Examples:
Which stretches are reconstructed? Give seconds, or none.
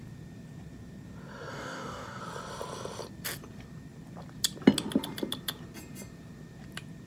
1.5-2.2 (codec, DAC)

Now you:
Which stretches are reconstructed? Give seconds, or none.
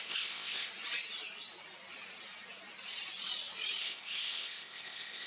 0.0-0.7 (codec, ZipCodec); 3.8-5.3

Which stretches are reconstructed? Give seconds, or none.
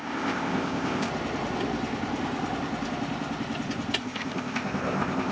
0.0-1.1 (codec, ZipCodec); 4.0-5.3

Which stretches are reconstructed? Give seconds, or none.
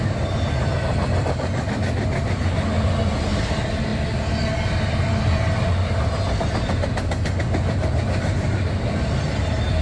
none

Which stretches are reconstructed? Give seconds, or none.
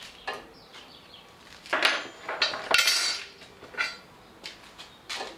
none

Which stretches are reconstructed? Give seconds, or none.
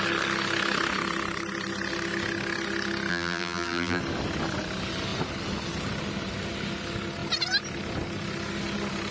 3.1-4.0 (vocoder, BigVGAN v2)